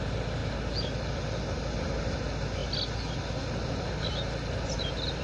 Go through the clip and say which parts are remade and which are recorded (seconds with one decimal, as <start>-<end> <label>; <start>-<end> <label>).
0.0-5.2 recorded